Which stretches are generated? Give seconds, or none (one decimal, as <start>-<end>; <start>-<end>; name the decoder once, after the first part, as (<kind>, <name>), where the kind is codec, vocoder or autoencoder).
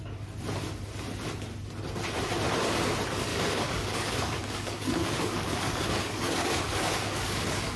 3.3-7.8 (codec, DAC)